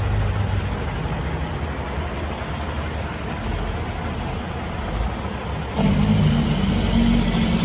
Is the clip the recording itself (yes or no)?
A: yes